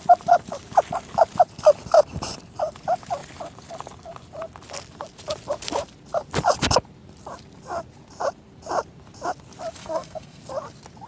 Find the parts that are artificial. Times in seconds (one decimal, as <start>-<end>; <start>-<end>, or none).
9.8-10.4